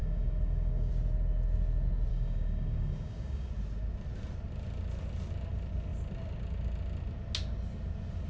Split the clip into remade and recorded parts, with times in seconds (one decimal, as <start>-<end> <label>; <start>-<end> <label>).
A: 0.0-0.9 remade; 0.9-2.1 recorded; 2.1-3.5 remade; 3.5-8.3 recorded